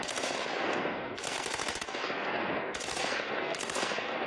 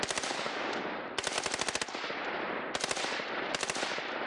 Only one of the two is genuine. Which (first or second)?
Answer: second